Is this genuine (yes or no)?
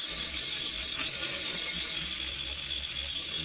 yes